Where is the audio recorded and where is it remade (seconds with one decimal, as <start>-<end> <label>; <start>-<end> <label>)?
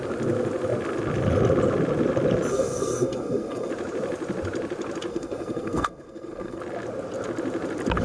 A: 0.0-2.5 recorded; 2.5-3.7 remade; 3.7-5.1 recorded; 5.1-6.6 remade; 6.6-8.0 recorded